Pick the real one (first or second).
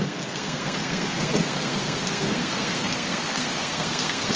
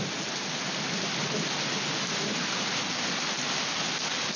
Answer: second